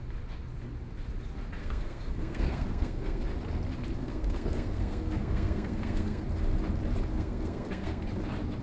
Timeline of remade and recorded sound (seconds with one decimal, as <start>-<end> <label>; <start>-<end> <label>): 0.0-1.6 recorded; 1.6-3.2 remade; 3.2-4.0 recorded; 4.0-6.2 remade; 6.2-7.1 recorded; 7.1-8.0 remade; 8.0-8.6 recorded